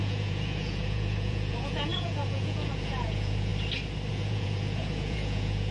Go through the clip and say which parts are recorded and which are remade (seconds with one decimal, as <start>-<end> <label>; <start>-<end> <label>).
0.0-3.5 remade; 3.5-4.1 recorded; 4.1-5.7 remade